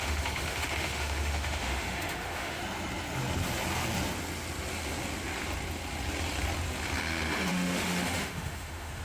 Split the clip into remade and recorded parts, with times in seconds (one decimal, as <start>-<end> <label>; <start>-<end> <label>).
0.0-2.6 remade; 2.6-7.5 recorded; 7.5-9.0 remade